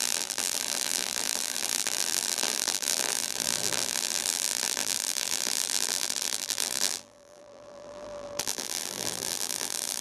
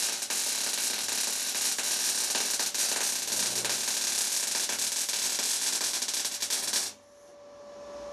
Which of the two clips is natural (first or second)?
second